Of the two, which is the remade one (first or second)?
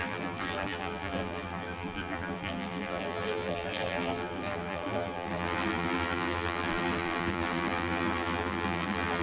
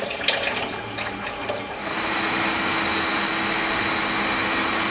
first